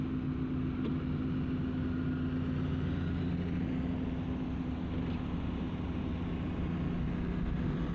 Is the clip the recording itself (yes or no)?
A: yes